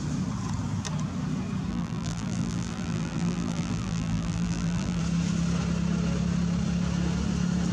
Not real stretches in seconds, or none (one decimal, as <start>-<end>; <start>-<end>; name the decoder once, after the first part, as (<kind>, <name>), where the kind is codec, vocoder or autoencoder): 1.7-5.0 (vocoder, BigVGAN v2)

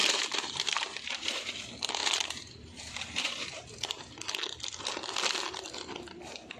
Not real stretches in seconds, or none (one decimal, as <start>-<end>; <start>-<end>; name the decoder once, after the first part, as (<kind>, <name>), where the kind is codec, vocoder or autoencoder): 0.0-1.3 (vocoder, BigVGAN v2); 2.0-4.3

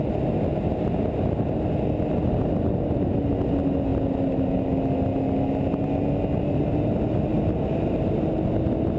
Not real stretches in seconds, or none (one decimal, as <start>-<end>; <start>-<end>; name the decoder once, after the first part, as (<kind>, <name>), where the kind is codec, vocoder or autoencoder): 7.3-8.6 (vocoder, BigVGAN v2)

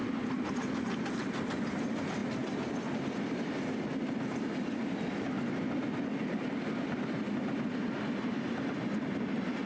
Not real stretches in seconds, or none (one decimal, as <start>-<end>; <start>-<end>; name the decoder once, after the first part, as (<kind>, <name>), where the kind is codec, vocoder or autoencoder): 0.0-1.1 (vocoder, BigVGAN v2)

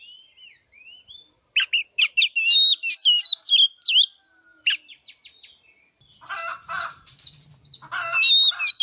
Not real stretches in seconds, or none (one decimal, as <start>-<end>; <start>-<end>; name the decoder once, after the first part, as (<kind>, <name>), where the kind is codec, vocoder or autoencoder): 6.5-7.2 (vocoder, BigVGAN v2)

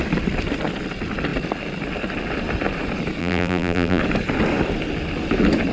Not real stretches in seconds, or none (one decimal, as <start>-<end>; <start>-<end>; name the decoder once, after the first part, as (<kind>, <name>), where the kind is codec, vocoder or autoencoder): 3.2-4.0 (vocoder, BigVGAN v2)

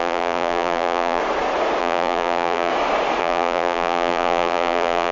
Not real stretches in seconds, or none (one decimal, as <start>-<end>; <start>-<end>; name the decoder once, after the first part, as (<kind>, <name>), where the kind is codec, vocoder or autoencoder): 0.0-1.2 (vocoder, BigVGAN v2); 1.8-2.7; 3.2-5.1